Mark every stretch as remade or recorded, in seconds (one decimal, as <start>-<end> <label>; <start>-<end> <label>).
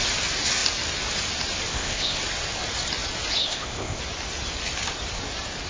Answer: 0.0-1.7 recorded; 1.7-2.2 remade; 2.2-3.4 recorded; 3.4-4.0 remade; 4.0-5.7 recorded